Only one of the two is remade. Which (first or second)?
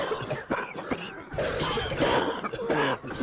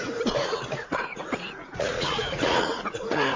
second